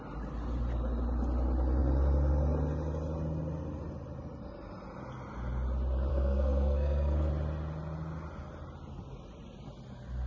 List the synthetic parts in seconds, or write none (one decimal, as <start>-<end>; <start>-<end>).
6.1-7.3